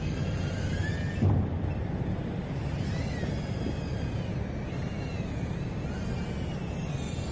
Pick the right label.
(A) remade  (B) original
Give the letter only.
B